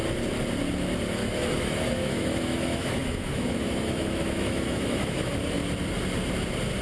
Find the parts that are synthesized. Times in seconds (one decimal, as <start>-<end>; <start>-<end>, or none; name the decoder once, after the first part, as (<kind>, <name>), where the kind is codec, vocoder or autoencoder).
1.2-5.3 (autoencoder, DAC-VAE)